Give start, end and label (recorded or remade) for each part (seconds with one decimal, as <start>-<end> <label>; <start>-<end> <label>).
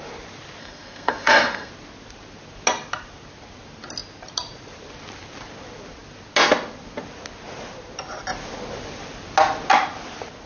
0.0-0.6 recorded; 0.6-1.7 remade; 1.7-10.5 recorded